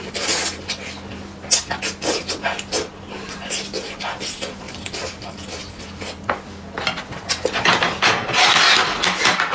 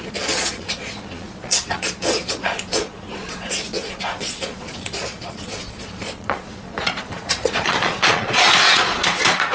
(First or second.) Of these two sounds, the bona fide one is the first